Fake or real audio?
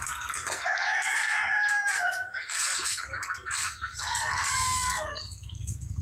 fake